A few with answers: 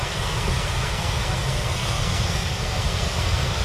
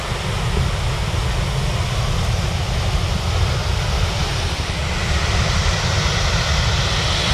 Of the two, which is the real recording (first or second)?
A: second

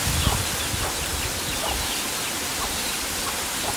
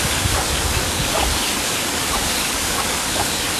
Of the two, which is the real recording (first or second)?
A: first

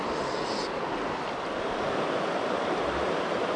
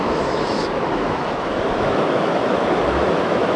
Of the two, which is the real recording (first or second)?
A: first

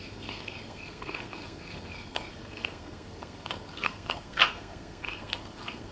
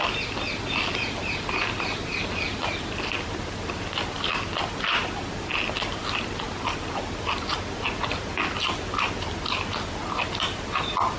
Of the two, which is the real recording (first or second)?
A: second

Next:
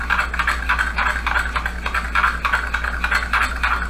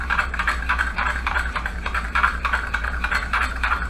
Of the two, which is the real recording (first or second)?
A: first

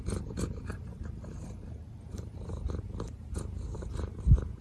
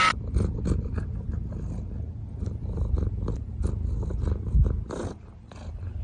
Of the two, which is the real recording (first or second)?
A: second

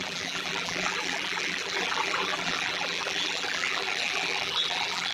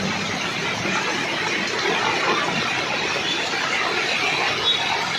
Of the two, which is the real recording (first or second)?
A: second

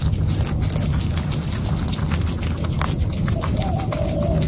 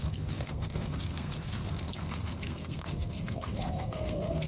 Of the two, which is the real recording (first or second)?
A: first